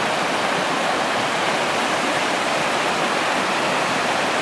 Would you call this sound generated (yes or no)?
no